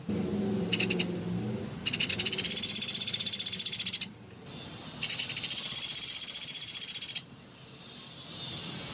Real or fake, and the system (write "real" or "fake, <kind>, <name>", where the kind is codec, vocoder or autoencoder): real